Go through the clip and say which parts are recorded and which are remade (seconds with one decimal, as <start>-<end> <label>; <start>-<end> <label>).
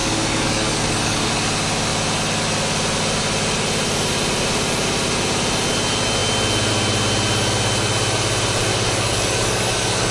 0.0-1.3 remade; 1.3-8.7 recorded; 8.7-10.1 remade